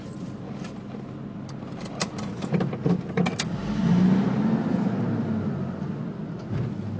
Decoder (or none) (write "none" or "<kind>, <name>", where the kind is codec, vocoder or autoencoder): none